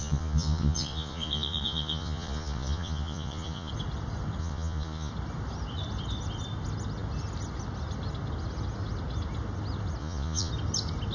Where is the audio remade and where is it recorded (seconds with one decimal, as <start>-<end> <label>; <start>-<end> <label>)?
0.0-3.7 remade; 3.7-4.4 recorded; 4.4-5.1 remade; 5.1-10.0 recorded; 10.0-10.5 remade; 10.5-11.1 recorded